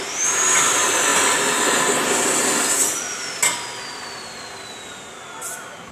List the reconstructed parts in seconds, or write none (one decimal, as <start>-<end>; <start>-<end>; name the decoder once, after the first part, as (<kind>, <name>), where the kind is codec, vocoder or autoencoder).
none